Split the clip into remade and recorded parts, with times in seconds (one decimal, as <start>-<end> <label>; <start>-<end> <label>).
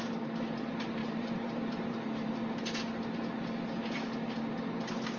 0.0-1.0 recorded; 1.0-2.3 remade; 2.3-5.2 recorded